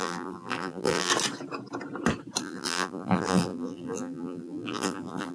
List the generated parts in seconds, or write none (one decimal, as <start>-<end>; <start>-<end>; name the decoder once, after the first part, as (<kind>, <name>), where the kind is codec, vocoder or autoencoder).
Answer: 0.0-1.1 (vocoder, BigVGAN v2); 2.4-5.3